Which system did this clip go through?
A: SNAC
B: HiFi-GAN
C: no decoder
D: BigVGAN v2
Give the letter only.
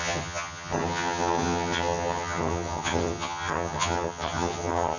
B